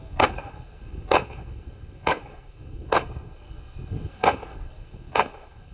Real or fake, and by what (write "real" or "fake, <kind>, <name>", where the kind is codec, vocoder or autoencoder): fake, codec, SNAC